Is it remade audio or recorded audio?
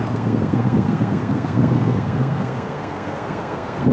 remade